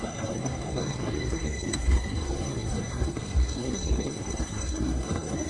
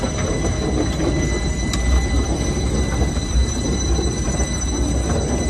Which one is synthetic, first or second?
first